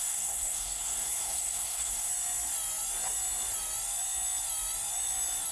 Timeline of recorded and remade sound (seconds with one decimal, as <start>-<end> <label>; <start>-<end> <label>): 0.0-2.1 remade; 2.1-5.5 recorded